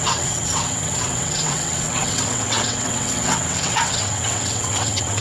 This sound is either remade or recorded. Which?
remade